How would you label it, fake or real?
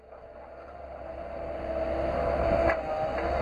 real